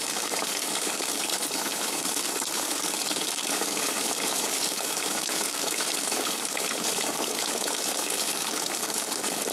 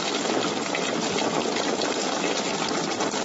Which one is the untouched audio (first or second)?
second